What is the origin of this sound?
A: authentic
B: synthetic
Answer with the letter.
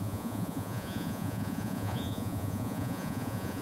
B